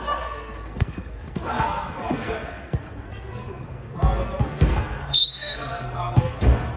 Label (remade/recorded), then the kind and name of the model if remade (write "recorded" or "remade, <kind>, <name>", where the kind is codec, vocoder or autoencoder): remade, codec, SNAC